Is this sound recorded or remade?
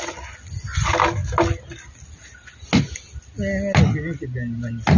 recorded